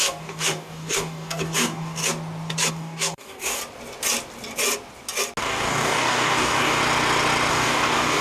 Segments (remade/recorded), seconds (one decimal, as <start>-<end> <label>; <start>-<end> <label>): 0.0-2.0 remade; 2.0-2.7 recorded; 2.7-3.6 remade; 3.6-5.4 recorded; 5.4-6.8 remade; 6.8-7.5 recorded; 7.5-8.2 remade